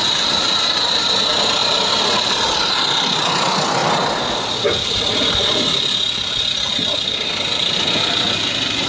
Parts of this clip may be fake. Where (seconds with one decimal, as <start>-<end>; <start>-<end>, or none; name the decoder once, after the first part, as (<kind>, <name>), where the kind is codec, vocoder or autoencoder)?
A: none